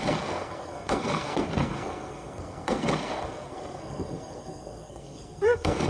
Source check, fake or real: fake